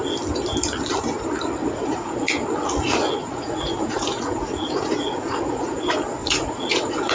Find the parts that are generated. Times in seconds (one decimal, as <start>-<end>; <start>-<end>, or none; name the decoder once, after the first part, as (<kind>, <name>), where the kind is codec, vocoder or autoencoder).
1.6-2.3 (vocoder, Vocos); 3.2-5.8; 6.2-7.1

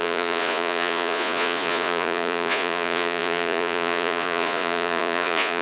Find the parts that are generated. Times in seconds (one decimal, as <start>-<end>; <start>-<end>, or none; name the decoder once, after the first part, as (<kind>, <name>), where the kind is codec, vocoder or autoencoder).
0.0-5.6 (vocoder, Vocos)

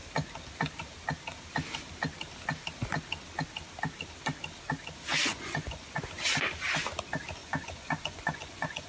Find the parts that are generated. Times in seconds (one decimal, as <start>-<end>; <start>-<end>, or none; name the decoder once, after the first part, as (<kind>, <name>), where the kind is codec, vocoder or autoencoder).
5.3-6.0 (vocoder, Vocos); 7.4-8.9

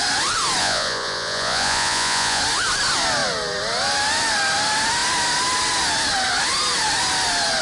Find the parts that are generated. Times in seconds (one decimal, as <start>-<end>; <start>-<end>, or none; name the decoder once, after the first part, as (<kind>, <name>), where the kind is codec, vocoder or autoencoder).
0.6-2.4 (vocoder, Vocos)

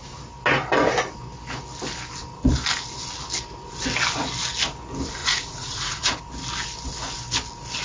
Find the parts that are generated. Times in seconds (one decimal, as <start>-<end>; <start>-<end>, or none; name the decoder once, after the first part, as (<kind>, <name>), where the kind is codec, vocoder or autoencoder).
5.2-6.2 (vocoder, Vocos)

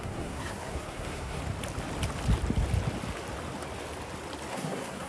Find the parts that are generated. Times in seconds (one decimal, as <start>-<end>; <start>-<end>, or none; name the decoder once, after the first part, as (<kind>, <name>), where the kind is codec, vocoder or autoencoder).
0.0-1.4 (codec, SNAC); 4.5-5.1

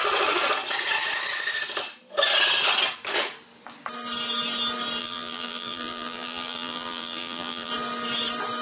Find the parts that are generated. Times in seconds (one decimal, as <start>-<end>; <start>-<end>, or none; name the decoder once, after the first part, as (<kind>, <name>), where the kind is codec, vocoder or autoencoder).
5.0-7.7 (vocoder, BigVGAN v2)